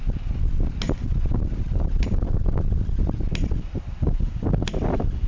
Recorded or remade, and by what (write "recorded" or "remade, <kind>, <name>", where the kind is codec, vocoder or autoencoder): recorded